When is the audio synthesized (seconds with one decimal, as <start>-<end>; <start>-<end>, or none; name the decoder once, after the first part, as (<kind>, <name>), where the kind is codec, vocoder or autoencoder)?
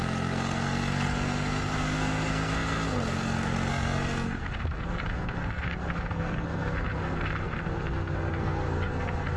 0.0-9.4 (codec, SNAC)